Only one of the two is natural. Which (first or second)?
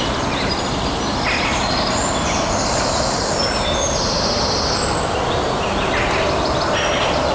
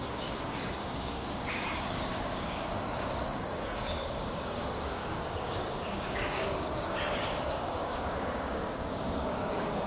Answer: first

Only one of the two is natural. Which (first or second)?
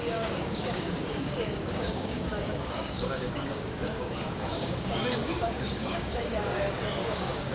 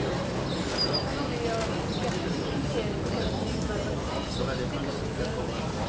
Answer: second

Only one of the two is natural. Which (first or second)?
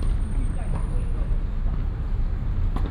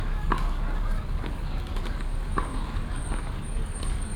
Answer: first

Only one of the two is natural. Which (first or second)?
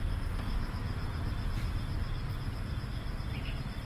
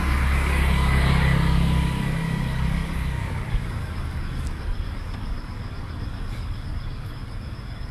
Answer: first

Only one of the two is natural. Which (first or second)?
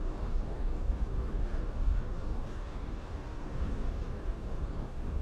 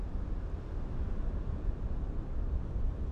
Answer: second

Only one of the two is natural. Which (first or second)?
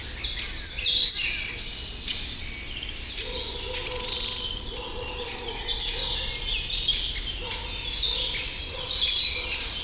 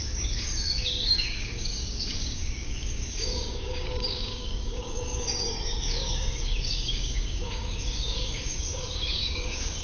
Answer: first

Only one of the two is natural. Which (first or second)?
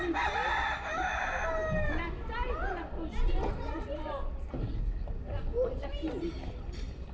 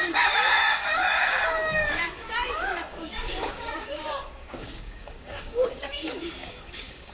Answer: first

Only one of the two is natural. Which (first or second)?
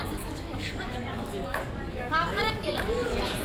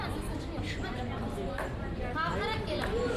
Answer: second